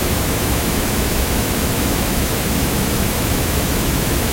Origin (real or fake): fake